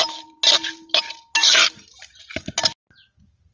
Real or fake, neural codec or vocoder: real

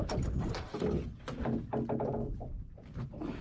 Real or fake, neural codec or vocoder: real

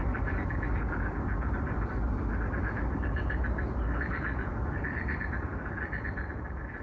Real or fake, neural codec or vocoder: fake, vocoder, BigVGAN v2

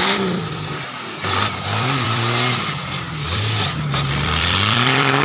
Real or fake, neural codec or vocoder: fake, vocoder, BigVGAN v2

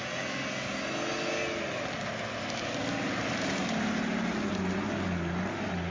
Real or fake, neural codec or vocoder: real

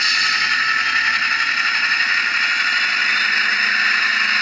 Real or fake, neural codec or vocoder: real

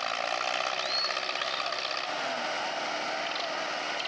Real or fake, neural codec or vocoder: real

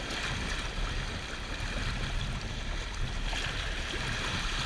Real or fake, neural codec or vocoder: real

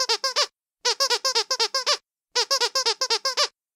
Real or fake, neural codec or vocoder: real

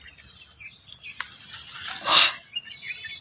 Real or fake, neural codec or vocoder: real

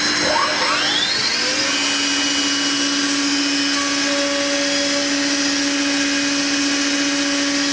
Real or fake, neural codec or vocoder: real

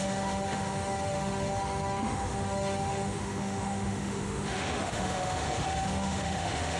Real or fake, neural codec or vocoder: fake, autoencoder, DAC-VAE